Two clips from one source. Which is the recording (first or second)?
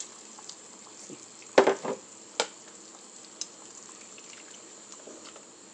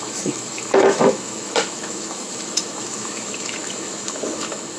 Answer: first